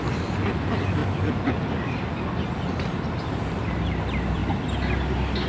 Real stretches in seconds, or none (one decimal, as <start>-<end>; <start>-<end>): 1.0-2.7; 4.4-5.5